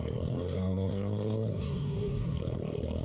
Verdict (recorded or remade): remade